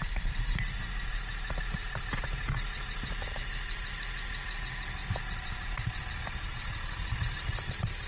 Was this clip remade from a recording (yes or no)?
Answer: no